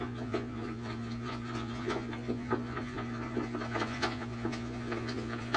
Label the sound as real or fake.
fake